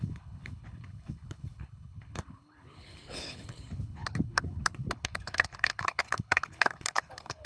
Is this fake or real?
fake